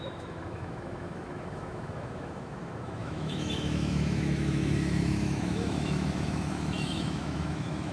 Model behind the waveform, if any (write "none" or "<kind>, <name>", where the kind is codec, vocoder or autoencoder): autoencoder, DAC-VAE